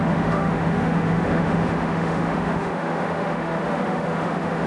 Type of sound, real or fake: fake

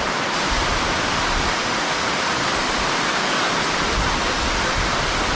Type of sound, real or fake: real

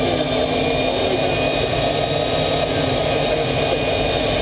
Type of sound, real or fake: real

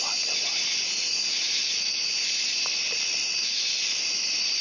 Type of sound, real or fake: real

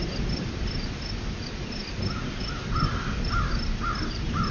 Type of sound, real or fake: fake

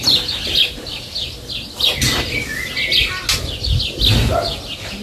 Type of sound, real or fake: real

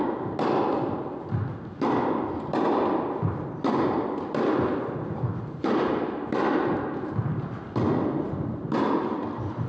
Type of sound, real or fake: real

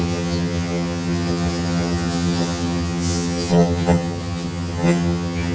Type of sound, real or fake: fake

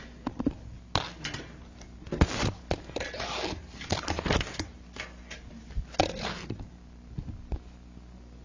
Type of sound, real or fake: real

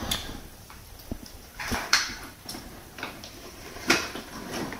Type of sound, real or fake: fake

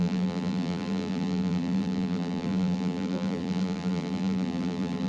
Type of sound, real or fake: fake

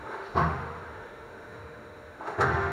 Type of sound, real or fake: fake